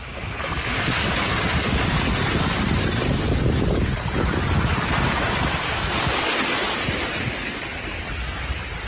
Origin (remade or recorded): recorded